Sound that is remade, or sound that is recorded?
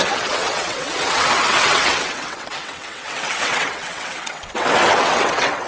remade